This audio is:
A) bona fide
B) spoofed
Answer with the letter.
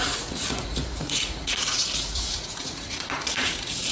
B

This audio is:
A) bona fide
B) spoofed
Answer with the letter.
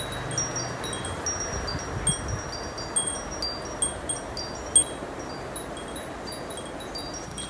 A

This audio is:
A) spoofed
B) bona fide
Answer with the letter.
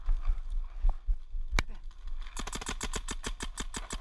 B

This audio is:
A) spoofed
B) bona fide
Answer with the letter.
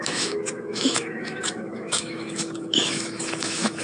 A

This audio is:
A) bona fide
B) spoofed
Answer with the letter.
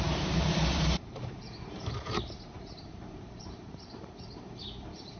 B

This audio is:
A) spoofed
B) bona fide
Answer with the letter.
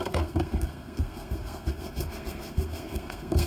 A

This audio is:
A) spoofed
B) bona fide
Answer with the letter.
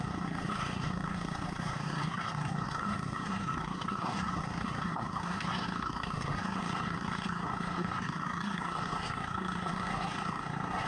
A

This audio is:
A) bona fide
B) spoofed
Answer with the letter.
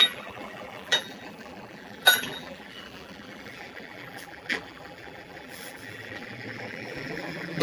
B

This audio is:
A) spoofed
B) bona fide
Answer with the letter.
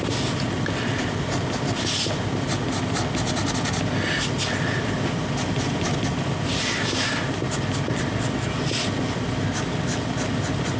B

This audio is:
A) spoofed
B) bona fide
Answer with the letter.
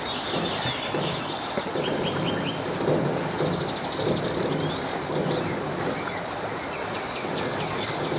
B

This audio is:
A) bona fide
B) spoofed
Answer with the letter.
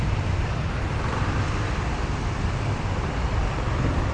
A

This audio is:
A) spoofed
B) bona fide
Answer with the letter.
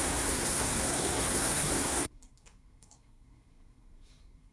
A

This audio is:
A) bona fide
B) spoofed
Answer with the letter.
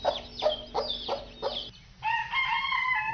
A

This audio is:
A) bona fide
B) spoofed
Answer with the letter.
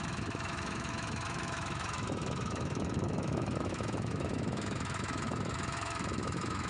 B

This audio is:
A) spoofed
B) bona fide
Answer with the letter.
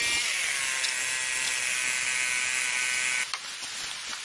B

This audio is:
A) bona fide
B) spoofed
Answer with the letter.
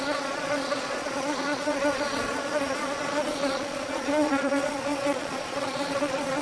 B